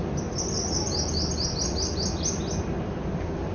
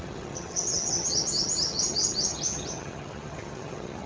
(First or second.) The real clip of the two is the first